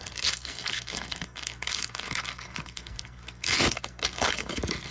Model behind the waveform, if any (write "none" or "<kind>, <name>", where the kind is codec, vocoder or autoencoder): codec, SNAC